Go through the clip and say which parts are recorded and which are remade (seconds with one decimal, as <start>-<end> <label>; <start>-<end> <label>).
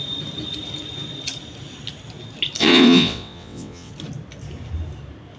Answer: 0.0-2.6 recorded; 2.6-3.9 remade; 3.9-5.4 recorded